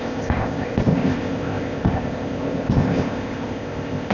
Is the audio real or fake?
fake